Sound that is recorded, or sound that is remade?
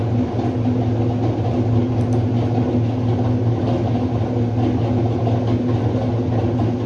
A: recorded